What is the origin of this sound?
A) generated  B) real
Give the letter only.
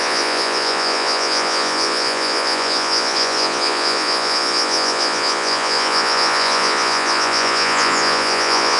A